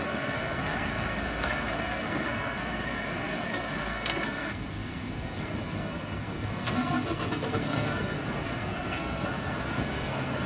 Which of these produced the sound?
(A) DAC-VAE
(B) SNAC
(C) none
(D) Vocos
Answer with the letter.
B